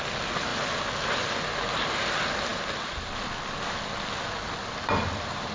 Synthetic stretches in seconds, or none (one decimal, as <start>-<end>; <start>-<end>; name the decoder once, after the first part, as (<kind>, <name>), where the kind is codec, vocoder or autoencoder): none